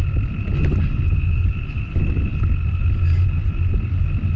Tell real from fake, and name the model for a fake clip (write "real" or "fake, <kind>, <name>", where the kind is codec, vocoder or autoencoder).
real